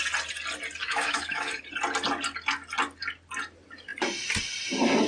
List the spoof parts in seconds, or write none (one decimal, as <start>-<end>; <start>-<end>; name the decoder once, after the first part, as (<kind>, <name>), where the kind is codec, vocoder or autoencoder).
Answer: 0.8-1.6 (autoencoder, DAC-VAE)